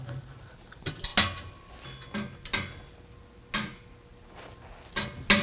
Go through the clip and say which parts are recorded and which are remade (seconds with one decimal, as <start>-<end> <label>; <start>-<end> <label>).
0.0-5.4 recorded